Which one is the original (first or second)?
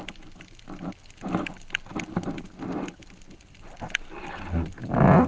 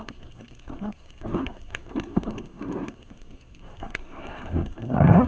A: first